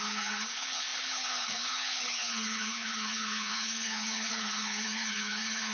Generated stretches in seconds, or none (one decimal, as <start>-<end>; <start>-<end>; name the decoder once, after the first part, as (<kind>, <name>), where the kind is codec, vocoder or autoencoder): 0.0-5.7 (codec, HILCodec)